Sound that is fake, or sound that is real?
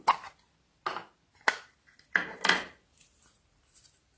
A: real